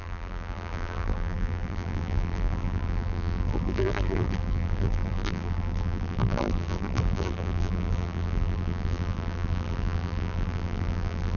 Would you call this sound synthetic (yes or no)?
yes